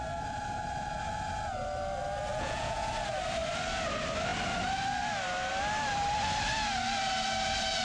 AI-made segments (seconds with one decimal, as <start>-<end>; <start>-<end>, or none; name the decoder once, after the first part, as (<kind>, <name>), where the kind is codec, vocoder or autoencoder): 2.3-2.9 (vocoder, Vocos)